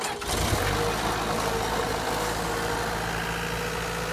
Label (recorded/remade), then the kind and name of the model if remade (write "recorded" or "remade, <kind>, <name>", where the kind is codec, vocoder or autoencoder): recorded